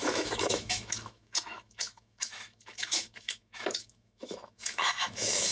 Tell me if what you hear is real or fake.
fake